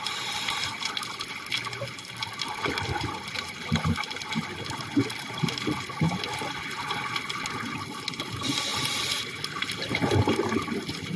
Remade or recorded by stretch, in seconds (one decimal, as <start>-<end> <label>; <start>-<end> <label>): 0.0-11.2 recorded